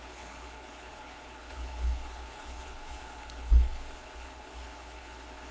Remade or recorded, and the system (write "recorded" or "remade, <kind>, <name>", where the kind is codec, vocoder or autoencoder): remade, codec, HILCodec